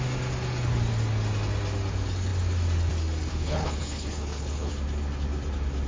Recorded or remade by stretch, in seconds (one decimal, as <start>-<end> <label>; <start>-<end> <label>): 0.0-3.3 recorded; 3.3-4.7 remade; 4.7-5.9 recorded